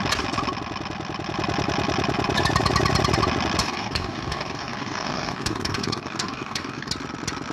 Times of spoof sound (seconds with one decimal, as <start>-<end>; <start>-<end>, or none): 3.6-6.9